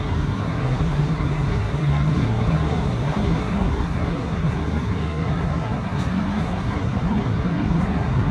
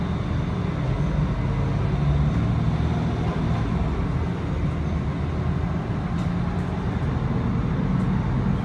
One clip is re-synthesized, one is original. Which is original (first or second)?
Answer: second